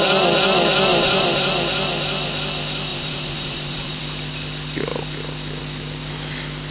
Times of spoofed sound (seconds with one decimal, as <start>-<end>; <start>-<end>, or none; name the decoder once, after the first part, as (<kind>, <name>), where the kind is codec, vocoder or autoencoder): 0.9-1.5 (vocoder, BigVGAN v2); 2.9-4.0